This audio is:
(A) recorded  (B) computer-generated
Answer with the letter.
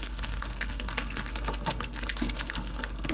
B